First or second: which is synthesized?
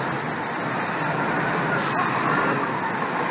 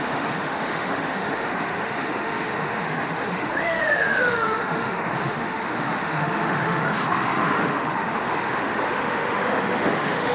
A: second